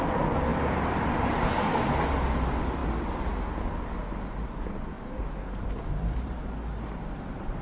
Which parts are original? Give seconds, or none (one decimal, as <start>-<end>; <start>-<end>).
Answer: 0.0-0.5; 1.4-7.6